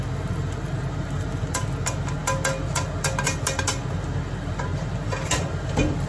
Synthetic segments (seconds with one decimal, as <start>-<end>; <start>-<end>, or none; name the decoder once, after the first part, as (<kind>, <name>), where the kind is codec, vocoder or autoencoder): none